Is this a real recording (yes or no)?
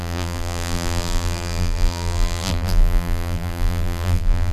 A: no